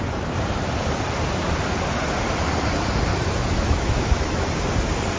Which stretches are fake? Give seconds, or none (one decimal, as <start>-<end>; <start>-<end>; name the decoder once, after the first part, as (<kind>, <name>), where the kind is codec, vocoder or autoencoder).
3.1-4.5 (autoencoder, DAC-VAE)